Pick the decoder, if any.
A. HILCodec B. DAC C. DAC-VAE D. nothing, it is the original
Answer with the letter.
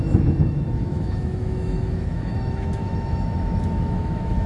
C